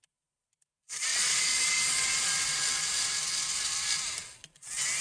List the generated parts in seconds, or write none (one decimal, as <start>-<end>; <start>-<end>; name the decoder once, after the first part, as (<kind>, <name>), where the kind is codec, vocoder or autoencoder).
1.1-2.1 (vocoder, Vocos)